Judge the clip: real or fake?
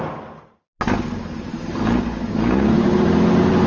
real